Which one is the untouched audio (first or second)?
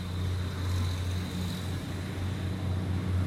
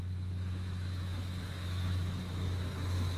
first